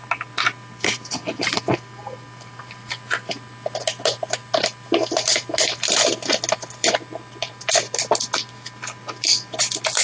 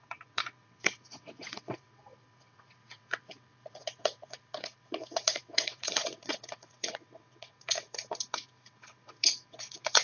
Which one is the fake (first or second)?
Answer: second